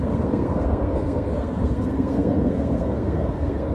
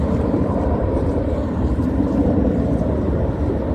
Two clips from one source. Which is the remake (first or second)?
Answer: first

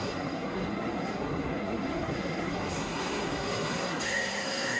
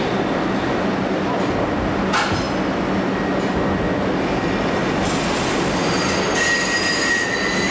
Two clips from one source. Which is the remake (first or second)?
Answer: first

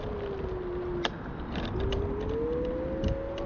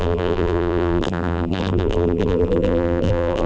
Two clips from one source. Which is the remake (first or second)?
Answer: second